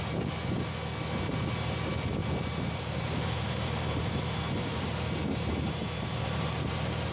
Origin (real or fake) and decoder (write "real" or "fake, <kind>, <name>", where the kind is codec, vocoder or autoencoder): real